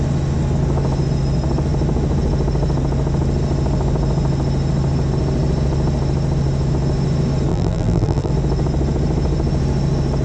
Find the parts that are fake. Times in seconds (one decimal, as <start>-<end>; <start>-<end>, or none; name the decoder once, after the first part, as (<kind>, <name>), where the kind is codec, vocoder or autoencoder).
7.5-8.3 (vocoder, BigVGAN v2)